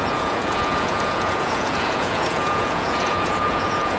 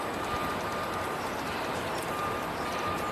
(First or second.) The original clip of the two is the second